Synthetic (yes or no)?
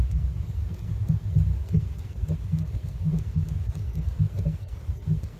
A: yes